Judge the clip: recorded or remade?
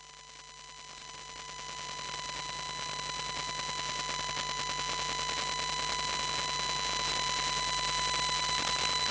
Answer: recorded